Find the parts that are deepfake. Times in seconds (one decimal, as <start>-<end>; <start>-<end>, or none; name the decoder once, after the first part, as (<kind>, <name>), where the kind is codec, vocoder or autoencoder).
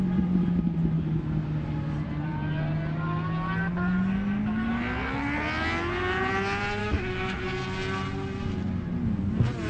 6.8-7.4 (autoencoder, DAC-VAE)